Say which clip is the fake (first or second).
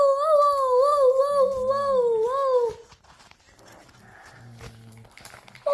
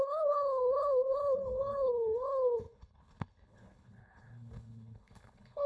second